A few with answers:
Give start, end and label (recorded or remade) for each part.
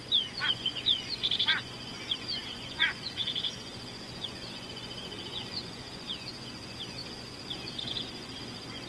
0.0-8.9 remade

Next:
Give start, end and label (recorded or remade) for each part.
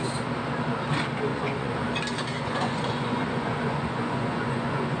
0.0-1.3 recorded; 1.3-1.8 remade; 1.8-2.3 recorded; 2.3-5.0 remade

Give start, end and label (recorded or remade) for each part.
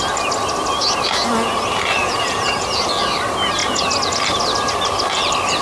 0.0-2.0 recorded; 2.0-2.8 remade; 2.8-3.6 recorded; 3.6-4.2 remade; 4.2-5.6 recorded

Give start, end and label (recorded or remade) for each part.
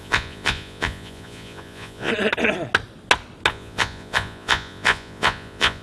0.0-2.1 remade; 2.1-3.5 recorded; 3.5-5.8 remade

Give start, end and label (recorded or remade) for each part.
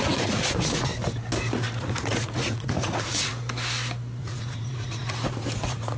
0.0-0.9 remade; 0.9-1.8 recorded; 1.8-3.3 remade; 3.3-4.2 recorded; 4.2-6.0 remade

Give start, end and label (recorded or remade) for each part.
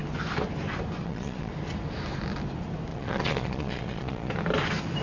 0.0-1.0 recorded; 1.0-1.5 remade; 1.5-2.9 recorded; 2.9-4.3 remade; 4.3-5.0 recorded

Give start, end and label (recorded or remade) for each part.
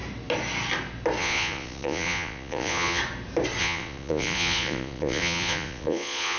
0.0-1.2 recorded; 1.2-3.0 remade; 3.0-3.6 recorded; 3.6-6.4 remade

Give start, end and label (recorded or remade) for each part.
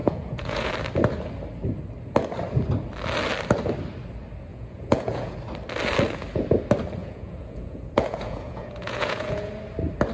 0.0-0.7 remade; 0.7-4.5 recorded; 4.5-5.3 remade; 5.3-7.0 recorded; 7.0-9.5 remade; 9.5-10.1 recorded